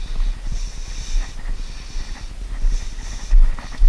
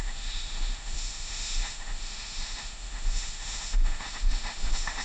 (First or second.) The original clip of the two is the first